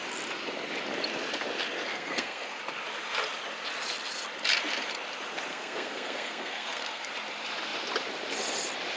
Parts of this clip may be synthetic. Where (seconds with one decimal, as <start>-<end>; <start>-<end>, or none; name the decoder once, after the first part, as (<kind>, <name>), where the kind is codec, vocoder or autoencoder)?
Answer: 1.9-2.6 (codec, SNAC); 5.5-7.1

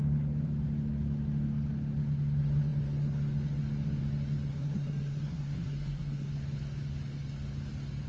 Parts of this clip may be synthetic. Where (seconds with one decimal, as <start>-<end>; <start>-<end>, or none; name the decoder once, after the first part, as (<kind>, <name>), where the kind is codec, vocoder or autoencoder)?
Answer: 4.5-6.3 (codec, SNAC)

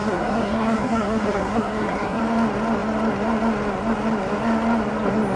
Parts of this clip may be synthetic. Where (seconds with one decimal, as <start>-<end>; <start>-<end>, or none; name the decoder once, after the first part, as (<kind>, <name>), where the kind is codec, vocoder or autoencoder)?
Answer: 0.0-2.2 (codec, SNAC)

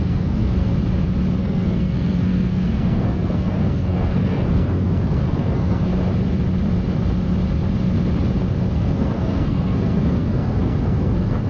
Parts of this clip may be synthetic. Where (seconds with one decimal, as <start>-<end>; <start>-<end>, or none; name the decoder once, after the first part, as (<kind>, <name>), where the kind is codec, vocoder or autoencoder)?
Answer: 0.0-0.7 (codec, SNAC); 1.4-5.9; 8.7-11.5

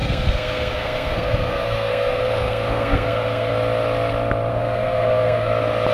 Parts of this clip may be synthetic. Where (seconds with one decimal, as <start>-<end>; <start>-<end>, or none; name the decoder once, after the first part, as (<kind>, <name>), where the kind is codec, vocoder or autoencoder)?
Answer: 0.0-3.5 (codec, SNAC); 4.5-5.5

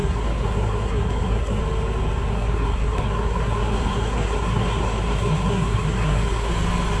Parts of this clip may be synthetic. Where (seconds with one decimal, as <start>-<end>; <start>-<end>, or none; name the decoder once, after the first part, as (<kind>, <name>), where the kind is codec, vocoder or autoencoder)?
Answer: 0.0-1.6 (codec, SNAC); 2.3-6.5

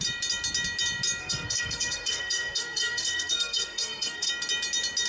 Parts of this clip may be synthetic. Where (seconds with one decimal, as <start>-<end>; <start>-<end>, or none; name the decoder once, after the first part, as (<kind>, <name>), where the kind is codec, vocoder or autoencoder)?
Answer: 1.2-4.3 (codec, SNAC)

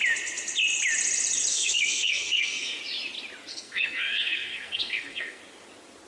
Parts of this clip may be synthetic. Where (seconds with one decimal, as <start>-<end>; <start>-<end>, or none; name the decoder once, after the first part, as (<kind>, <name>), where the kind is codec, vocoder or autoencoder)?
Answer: 1.5-2.8 (codec, SNAC); 3.5-5.4